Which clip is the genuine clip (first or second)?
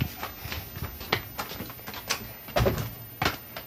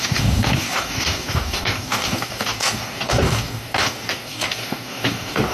first